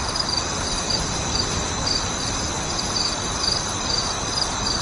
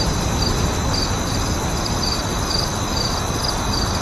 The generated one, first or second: first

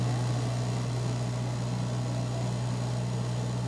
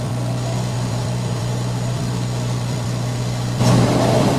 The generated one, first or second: second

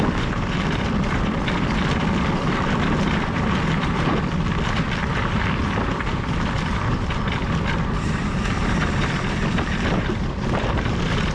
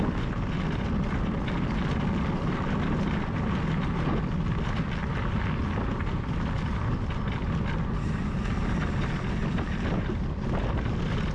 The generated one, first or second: first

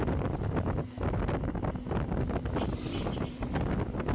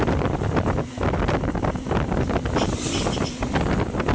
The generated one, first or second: second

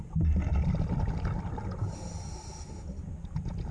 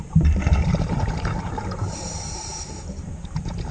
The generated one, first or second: second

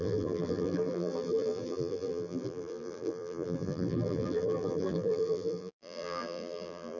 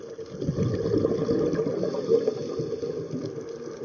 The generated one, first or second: first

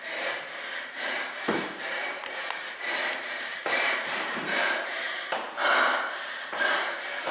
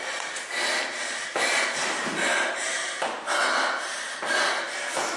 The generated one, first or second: first